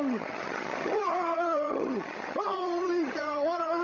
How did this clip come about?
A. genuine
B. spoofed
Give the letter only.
B